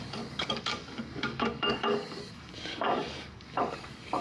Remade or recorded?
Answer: remade